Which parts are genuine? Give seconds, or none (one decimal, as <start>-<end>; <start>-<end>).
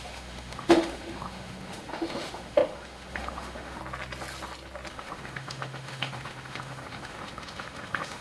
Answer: 3.8-4.9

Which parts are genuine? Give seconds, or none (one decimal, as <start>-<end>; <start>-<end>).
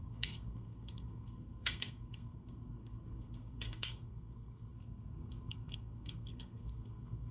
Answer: none